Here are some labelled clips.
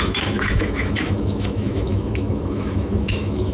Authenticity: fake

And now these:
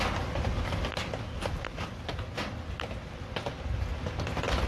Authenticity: real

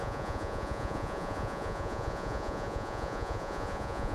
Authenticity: fake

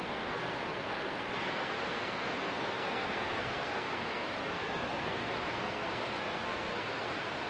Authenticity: fake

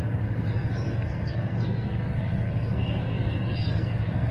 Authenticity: fake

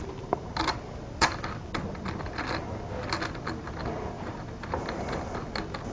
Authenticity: real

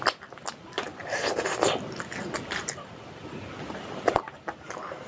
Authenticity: real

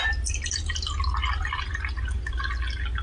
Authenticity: real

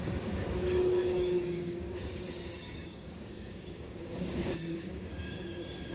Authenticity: fake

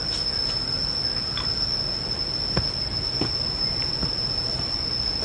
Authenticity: real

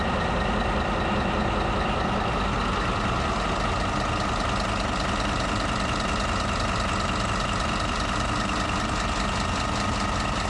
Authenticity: real